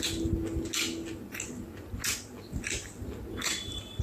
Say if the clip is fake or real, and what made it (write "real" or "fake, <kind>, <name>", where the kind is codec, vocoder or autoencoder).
real